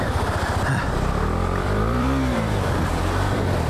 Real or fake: fake